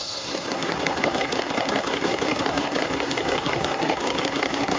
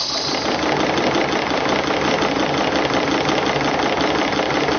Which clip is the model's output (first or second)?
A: first